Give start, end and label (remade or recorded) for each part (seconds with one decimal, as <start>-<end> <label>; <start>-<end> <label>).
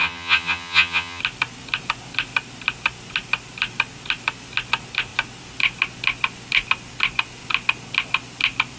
0.0-1.2 remade; 1.2-8.8 recorded